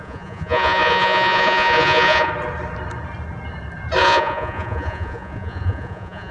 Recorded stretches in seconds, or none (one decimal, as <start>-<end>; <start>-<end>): 2.3-4.0